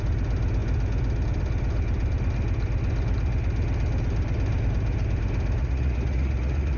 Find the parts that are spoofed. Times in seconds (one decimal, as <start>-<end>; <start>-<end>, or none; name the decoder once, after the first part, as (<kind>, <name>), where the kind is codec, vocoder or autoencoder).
5.6-6.8 (vocoder, Vocos)